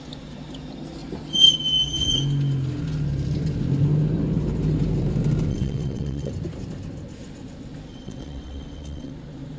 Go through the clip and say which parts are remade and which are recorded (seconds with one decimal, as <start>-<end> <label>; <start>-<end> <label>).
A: 0.0-5.5 recorded; 5.5-6.3 remade; 6.3-7.9 recorded; 7.9-9.1 remade; 9.1-9.6 recorded

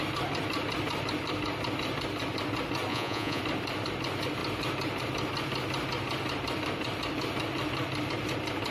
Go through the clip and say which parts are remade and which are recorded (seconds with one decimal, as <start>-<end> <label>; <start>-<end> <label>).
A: 0.0-2.9 recorded; 2.9-3.4 remade; 3.4-8.7 recorded

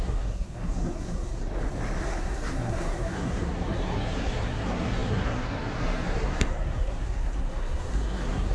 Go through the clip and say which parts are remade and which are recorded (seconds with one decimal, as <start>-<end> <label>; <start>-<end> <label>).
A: 0.0-1.4 remade; 1.4-2.0 recorded; 2.0-8.5 remade

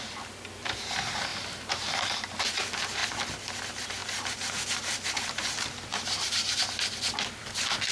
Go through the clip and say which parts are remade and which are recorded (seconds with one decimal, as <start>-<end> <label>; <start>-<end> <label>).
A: 0.0-5.9 recorded; 5.9-6.6 remade; 6.6-7.9 recorded

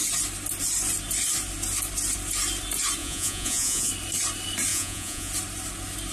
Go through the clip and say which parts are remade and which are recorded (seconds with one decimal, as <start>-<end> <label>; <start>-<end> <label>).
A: 0.0-3.0 recorded; 3.0-3.9 remade; 3.9-4.7 recorded; 4.7-5.3 remade; 5.3-6.1 recorded

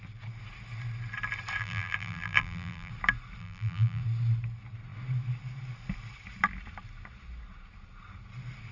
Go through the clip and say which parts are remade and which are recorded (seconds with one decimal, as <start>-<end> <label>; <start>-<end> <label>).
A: 0.0-1.6 recorded; 1.6-2.9 remade; 2.9-3.4 recorded; 3.4-4.0 remade; 4.0-8.7 recorded

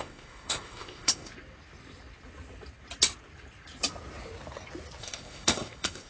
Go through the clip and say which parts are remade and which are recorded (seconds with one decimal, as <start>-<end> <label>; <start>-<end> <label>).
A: 0.0-1.3 remade; 1.3-5.0 recorded; 5.0-6.1 remade